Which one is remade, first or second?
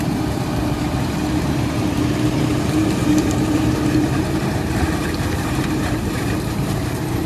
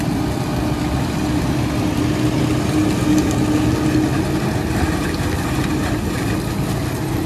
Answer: first